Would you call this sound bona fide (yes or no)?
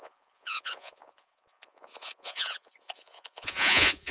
no